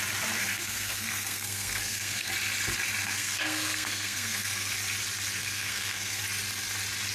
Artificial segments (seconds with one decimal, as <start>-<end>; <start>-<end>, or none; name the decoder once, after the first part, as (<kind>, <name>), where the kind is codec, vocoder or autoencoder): 0.4-2.3 (codec, SNAC); 3.0-4.7; 5.4-6.2

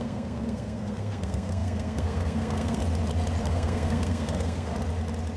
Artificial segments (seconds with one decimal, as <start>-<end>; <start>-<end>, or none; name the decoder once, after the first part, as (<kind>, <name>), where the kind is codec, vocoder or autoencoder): 0.0-2.8 (codec, SNAC); 3.4-4.7

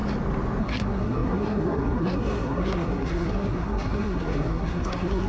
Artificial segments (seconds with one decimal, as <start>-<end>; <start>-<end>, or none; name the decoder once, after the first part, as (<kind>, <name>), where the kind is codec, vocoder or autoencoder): 0.6-5.3 (codec, SNAC)

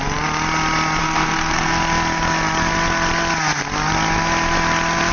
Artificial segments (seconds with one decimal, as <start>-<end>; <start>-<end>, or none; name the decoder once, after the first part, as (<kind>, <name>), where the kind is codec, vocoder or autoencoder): 1.0-1.8 (codec, SNAC)

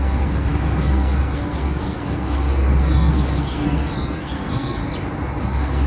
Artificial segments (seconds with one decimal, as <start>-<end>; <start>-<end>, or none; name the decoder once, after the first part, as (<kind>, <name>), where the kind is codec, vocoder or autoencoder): 0.0-4.8 (codec, SNAC); 5.4-5.9

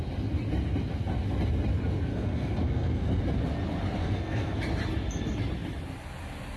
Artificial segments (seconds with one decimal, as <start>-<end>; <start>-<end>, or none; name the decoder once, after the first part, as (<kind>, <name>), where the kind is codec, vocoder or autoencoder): 2.1-3.2 (codec, SNAC); 4.0-4.6

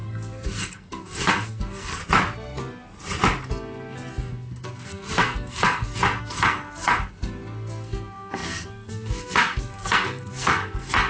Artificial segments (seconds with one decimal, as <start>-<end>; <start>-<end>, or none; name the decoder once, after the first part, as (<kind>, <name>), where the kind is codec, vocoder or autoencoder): 0.0-2.0 (codec, SNAC); 4.1-11.1